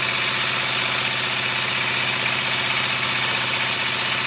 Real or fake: real